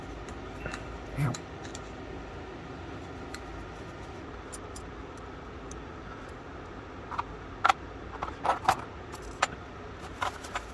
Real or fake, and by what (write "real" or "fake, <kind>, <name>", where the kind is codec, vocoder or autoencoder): real